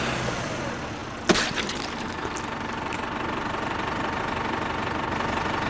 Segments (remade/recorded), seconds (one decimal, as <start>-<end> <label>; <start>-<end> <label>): 0.0-5.7 recorded